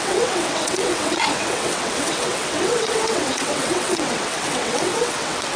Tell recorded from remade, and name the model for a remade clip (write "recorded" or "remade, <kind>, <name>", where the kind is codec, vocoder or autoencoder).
remade, vocoder, WaveNeXt